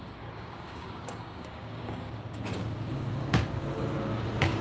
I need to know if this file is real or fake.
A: fake